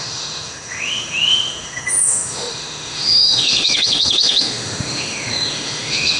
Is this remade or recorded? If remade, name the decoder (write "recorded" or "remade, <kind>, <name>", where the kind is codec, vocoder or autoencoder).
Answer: remade, autoencoder, DAC-VAE